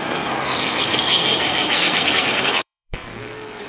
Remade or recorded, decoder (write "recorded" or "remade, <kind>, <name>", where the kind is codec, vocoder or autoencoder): remade, codec, SNAC